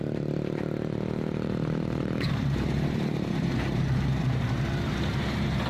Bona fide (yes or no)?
no